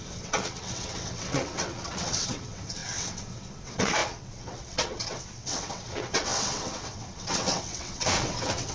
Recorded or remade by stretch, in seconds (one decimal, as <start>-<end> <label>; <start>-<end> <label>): 0.0-8.7 remade